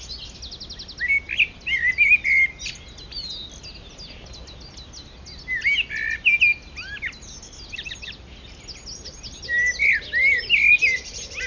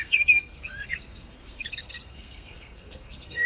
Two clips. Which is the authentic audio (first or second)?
first